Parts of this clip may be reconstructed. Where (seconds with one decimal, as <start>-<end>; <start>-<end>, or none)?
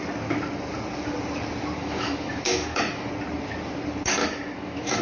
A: 1.8-3.1; 4.2-5.0